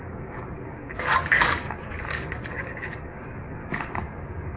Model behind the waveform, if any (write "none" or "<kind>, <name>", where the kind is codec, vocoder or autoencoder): codec, DAC